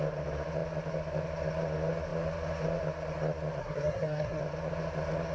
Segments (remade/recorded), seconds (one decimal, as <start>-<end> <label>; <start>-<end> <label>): 0.0-3.6 recorded; 3.6-4.4 remade; 4.4-5.3 recorded